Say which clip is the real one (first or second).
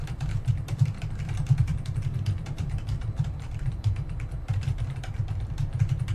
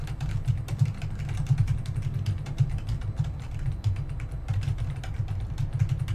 second